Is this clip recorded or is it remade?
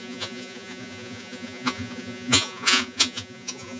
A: remade